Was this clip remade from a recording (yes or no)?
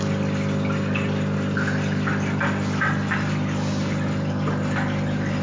no